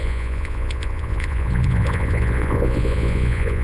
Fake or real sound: fake